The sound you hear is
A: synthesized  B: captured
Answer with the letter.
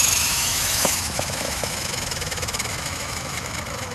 A